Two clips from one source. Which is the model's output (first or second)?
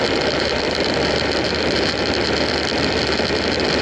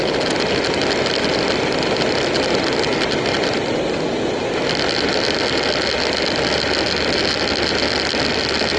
first